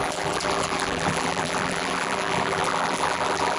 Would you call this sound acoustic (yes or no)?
no